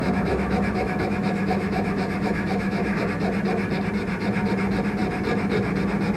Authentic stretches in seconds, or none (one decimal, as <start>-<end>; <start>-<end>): 3.0-6.2